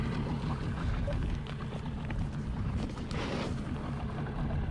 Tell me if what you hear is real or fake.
real